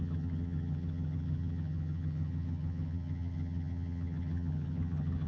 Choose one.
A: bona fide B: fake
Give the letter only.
B